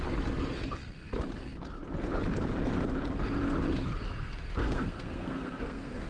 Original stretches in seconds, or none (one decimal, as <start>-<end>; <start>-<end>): 0.0-4.6